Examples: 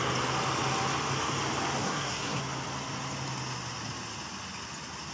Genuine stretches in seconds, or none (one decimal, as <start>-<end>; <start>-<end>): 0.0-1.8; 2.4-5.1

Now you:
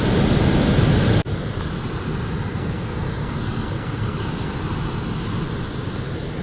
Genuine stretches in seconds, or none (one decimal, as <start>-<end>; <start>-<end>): 0.0-2.5; 4.5-6.4

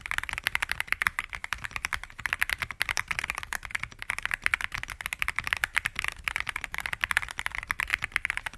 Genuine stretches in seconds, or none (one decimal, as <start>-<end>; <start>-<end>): 0.0-8.6

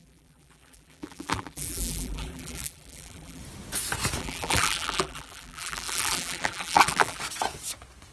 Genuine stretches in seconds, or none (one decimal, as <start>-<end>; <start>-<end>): 3.4-4.2; 7.2-8.1

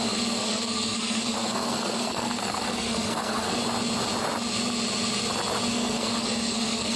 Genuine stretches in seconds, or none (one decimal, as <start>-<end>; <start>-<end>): 3.6-5.7

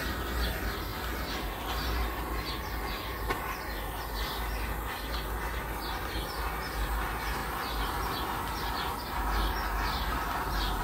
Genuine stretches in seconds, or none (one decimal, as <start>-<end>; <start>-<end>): 0.0-10.8

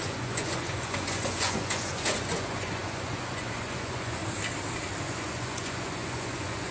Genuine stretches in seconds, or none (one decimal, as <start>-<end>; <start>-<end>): 4.2-5.1